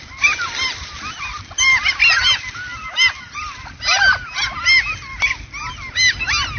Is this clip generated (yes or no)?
no